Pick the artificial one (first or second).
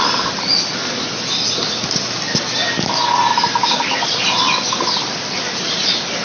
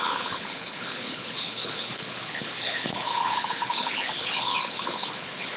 second